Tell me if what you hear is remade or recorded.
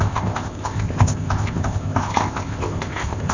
remade